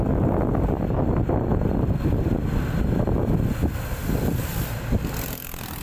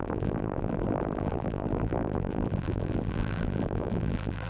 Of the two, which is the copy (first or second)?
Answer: second